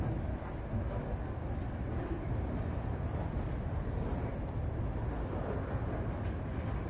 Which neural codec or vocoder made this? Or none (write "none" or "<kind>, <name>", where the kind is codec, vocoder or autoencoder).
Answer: none